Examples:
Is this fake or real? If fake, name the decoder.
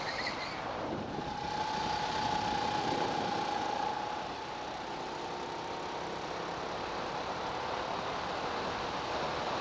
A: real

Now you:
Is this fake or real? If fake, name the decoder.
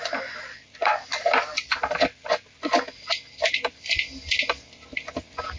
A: real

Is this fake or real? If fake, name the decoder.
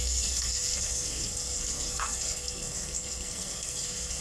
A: fake, codec, SNAC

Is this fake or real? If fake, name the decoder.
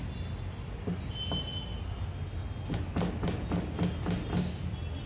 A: real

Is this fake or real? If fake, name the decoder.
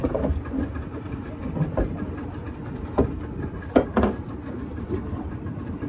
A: real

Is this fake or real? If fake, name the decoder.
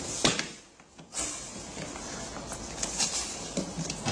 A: real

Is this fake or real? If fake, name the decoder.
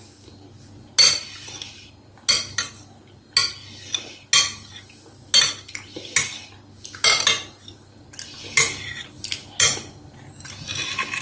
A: real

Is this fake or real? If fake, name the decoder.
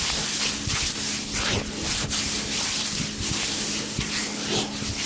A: real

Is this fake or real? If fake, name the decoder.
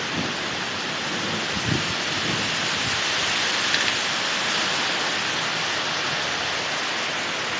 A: real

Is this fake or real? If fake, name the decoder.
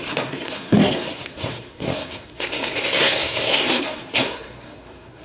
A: fake, codec, SNAC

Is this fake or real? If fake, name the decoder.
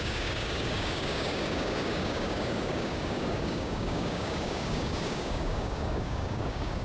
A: fake, codec, DAC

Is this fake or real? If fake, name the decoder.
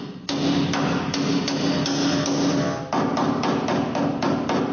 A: real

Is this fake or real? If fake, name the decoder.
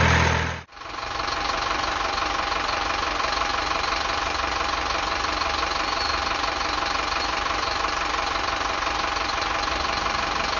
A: real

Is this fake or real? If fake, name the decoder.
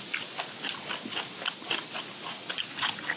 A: real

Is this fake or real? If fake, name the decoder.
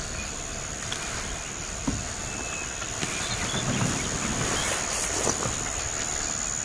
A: real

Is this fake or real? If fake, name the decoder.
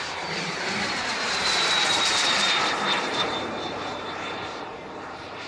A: fake, vocoder, BigVGAN v2